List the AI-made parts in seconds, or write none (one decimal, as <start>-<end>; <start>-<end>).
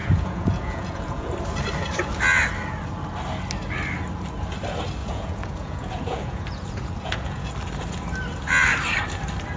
0.0-1.3; 5.0-7.5